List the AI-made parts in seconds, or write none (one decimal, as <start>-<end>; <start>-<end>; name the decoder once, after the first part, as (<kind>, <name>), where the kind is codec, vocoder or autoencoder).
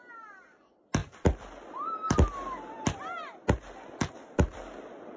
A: none